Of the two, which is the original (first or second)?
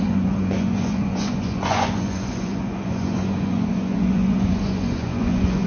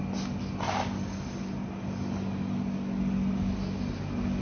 second